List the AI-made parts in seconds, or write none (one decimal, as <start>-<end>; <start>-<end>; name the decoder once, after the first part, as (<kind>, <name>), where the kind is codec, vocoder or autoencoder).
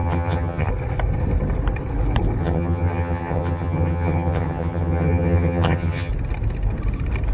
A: 0.0-0.7 (vocoder, HiFi-GAN); 2.4-6.1